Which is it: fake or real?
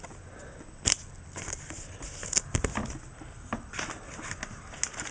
real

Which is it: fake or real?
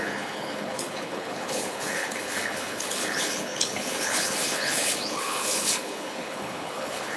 fake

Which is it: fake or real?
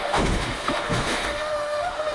fake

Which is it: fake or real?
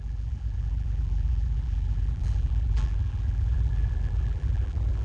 fake